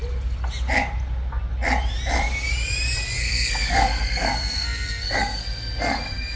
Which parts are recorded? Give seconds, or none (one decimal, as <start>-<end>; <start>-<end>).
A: 0.0-3.2